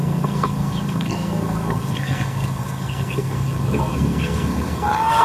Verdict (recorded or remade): remade